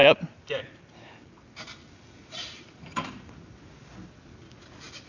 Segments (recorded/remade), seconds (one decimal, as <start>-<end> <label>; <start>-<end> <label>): 0.0-3.1 remade; 3.1-5.1 recorded